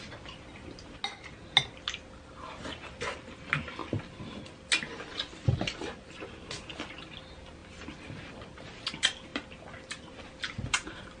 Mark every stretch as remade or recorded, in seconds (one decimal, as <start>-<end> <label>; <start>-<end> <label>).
0.0-11.2 recorded